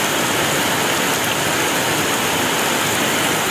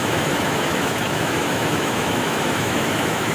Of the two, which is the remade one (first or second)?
second